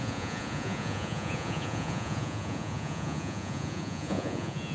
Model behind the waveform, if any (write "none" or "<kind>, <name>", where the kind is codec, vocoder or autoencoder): vocoder, Vocos